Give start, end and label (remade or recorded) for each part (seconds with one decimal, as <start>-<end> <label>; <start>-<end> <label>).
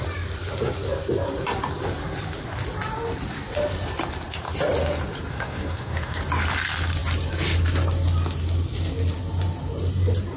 0.0-5.3 recorded; 5.3-6.2 remade; 6.2-10.4 recorded